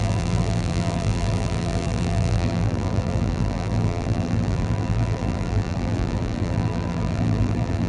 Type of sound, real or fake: fake